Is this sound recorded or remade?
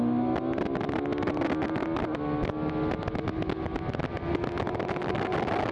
recorded